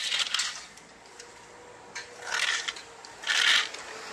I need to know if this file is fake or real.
real